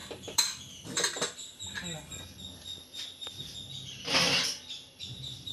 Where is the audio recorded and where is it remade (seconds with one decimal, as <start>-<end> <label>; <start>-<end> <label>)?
0.0-0.6 remade; 0.6-5.5 recorded